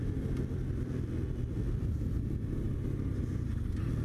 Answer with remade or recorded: recorded